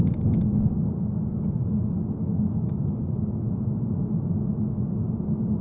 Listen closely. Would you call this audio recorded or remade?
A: recorded